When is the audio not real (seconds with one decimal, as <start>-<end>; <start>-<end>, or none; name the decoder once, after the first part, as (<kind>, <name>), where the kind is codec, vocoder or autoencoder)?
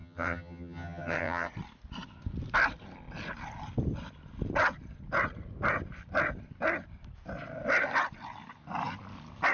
0.0-1.5 (vocoder, HiFi-GAN)